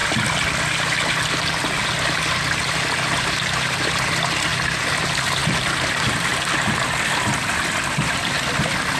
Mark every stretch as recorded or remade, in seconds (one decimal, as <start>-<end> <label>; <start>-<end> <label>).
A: 0.0-9.0 recorded